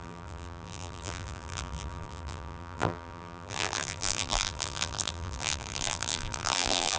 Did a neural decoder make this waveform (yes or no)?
yes